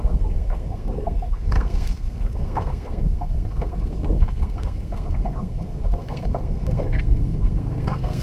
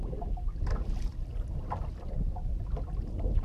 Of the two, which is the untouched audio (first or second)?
second